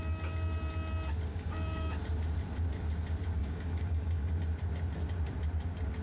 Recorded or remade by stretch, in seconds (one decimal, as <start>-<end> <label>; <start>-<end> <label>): 0.0-1.3 recorded; 1.3-1.9 remade; 1.9-3.4 recorded; 3.4-4.3 remade; 4.3-6.0 recorded